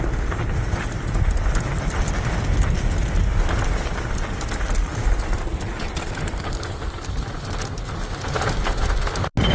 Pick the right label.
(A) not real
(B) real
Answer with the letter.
B